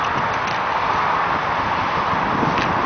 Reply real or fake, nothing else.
real